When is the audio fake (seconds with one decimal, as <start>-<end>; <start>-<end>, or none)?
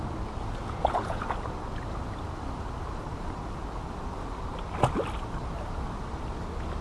0.6-1.2